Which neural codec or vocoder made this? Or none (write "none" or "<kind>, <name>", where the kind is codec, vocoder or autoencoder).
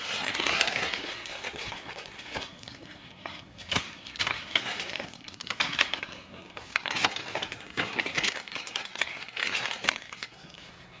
codec, SNAC